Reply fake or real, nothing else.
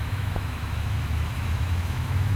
fake